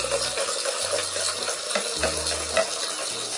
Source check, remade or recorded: recorded